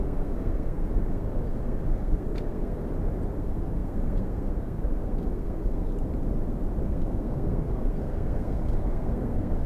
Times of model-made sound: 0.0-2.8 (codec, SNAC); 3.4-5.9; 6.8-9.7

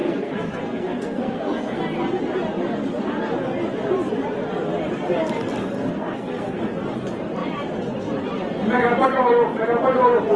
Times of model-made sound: 0.0-1.8 (codec, SNAC); 5.6-6.6

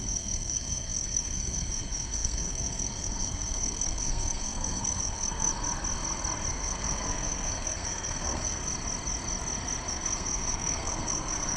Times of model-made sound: 0.0-5.5 (codec, SNAC); 6.5-8.6; 9.9-11.6

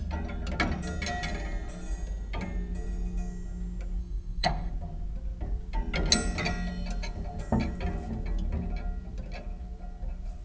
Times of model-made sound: 4.0-4.7 (codec, SNAC)

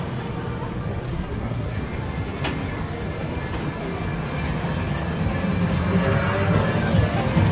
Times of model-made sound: 1.1-1.8 (codec, SNAC)

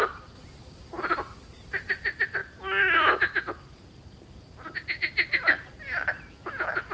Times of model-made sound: none

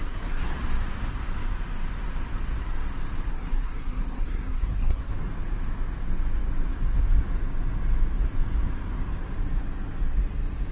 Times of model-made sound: 0.0-0.6 (codec, SNAC); 3.3-5.1

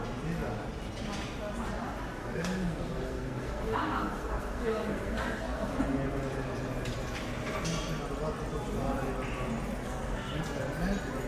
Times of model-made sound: 2.2-5.8 (codec, SNAC); 9.8-10.4